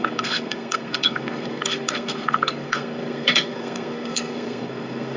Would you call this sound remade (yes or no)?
yes